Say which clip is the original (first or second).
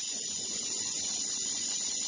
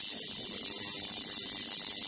second